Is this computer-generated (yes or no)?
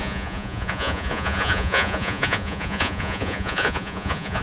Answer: yes